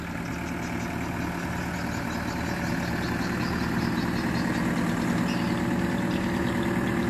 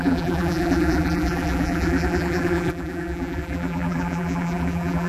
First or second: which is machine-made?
second